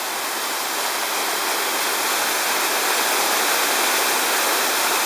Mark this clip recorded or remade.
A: recorded